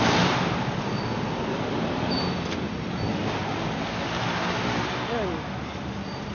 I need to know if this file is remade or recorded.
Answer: recorded